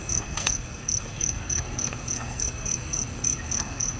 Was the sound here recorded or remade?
remade